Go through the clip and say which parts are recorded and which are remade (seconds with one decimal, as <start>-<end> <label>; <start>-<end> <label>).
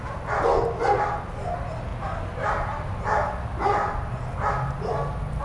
0.0-5.4 recorded